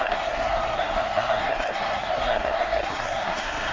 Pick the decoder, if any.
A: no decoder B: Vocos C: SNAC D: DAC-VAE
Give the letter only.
C